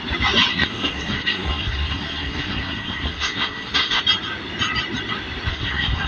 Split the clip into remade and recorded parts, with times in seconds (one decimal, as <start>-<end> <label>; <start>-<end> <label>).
0.0-0.5 recorded; 0.5-4.0 remade; 4.0-5.5 recorded; 5.5-6.1 remade